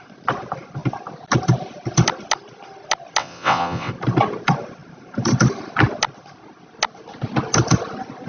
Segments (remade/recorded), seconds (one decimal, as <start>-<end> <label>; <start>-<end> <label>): 0.0-3.2 recorded; 3.2-3.9 remade; 3.9-8.3 recorded